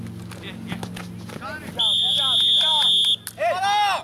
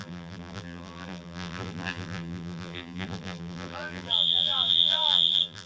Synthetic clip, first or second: second